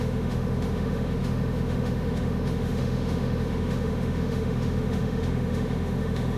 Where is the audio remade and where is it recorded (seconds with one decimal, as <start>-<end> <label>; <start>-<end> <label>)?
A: 0.0-6.4 remade